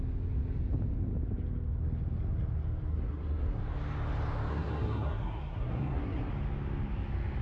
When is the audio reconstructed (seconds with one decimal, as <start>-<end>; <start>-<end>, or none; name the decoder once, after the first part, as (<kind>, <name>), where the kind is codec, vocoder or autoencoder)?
2.9-3.6 (codec, SNAC); 4.5-6.3